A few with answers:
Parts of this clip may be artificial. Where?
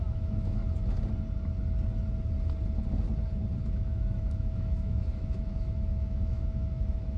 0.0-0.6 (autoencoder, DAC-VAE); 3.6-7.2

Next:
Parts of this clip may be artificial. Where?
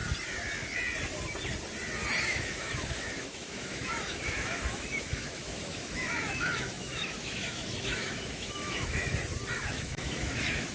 2.2-9.1 (autoencoder, DAC-VAE); 9.7-10.7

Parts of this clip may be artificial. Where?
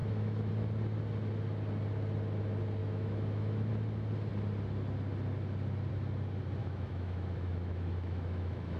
0.0-0.5 (autoencoder, DAC-VAE); 2.8-3.7; 6.6-8.8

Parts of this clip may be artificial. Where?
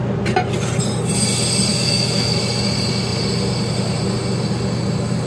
1.7-2.4 (autoencoder, DAC-VAE)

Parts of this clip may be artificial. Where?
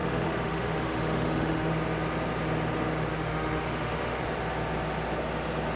0.0-1.7 (autoencoder, DAC-VAE); 3.1-4.2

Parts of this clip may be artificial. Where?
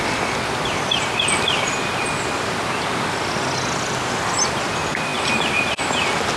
none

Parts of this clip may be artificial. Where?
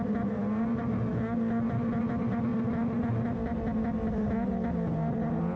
none